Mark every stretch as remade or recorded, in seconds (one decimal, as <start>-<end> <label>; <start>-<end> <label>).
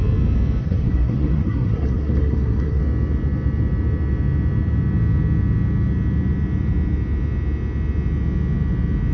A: 0.0-0.6 recorded; 0.6-2.8 remade; 2.8-9.1 recorded